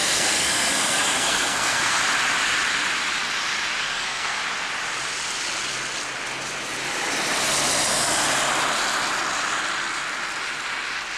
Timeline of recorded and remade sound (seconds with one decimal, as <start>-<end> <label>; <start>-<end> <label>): 0.0-2.0 remade; 2.0-3.8 recorded; 3.8-4.4 remade; 4.4-11.2 recorded